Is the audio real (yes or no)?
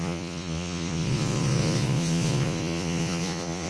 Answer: no